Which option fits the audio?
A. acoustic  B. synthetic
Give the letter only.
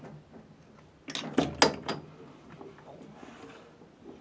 A